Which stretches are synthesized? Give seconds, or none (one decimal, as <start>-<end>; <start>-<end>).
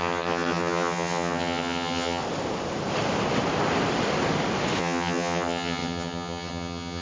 0.0-2.2; 4.8-7.0